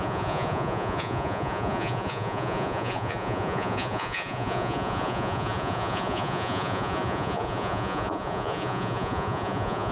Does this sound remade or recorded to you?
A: remade